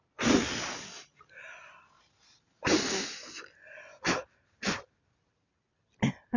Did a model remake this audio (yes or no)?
no